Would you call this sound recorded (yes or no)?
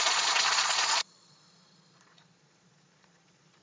no